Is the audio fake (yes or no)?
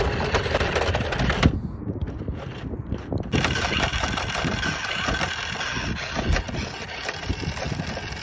no